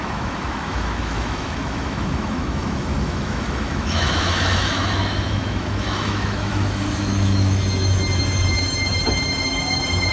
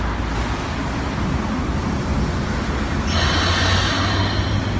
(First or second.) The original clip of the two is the second